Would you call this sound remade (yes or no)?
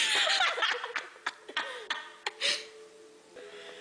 no